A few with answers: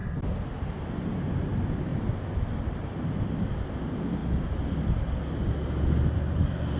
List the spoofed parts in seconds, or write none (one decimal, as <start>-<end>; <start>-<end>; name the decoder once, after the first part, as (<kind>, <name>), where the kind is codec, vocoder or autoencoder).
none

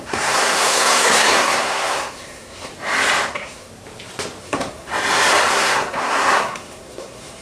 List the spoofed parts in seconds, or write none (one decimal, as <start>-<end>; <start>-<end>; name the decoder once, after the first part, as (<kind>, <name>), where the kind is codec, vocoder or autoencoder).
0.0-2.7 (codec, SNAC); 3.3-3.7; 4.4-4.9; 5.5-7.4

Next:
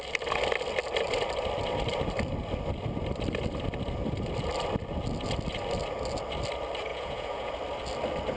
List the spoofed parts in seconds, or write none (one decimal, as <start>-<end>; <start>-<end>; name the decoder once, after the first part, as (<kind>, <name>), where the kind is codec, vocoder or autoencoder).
6.9-7.5 (vocoder, Vocos)

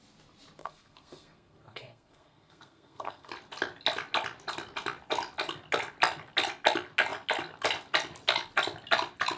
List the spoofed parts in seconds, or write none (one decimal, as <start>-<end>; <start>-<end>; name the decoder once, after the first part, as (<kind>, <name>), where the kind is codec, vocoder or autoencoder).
0.6-3.3 (codec, SNAC)

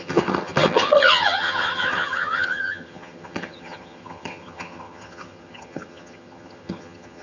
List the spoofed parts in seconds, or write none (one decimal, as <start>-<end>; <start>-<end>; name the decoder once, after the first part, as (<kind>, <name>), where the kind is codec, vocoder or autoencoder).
0.0-7.2 (vocoder, HiFi-GAN)